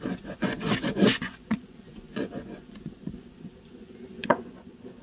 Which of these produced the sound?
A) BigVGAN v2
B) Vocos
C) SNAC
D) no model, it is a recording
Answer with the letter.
B